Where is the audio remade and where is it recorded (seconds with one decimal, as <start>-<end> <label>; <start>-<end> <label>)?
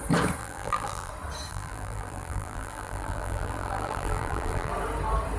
0.0-0.4 recorded; 0.4-1.1 remade; 1.1-1.5 recorded; 1.5-4.7 remade; 4.7-5.4 recorded